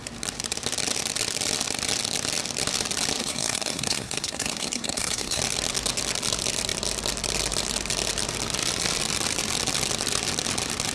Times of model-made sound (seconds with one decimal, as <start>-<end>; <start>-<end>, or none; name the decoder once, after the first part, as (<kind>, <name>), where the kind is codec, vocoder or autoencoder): 3.2-5.4 (codec, SNAC)